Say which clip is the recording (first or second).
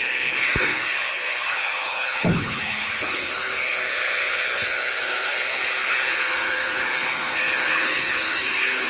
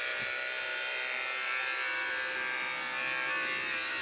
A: second